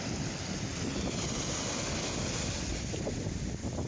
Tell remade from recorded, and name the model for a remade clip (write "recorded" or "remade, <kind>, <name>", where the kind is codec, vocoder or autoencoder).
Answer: recorded